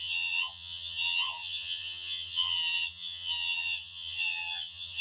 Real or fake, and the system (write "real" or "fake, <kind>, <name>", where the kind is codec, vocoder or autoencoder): fake, vocoder, HiFi-GAN